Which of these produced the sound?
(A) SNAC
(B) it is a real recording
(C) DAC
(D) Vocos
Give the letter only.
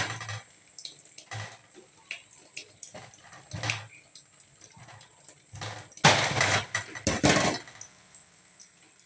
B